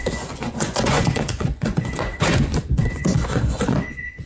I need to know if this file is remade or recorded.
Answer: remade